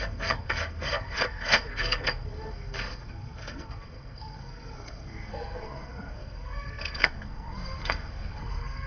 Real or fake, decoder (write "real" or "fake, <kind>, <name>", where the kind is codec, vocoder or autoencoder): fake, codec, SNAC